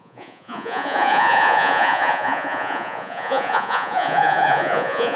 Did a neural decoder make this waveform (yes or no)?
yes